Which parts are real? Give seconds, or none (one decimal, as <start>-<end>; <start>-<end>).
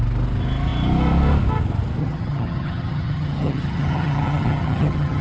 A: 0.0-2.0